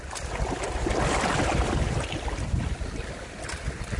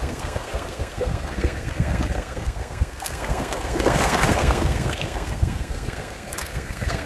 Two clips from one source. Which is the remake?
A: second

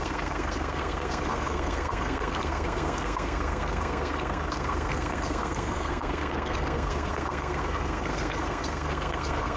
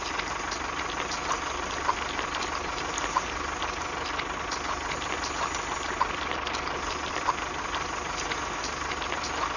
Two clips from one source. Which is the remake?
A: first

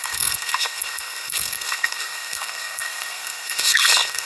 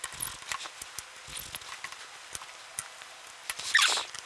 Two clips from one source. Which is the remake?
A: first